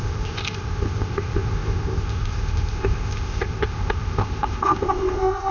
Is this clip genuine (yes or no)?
no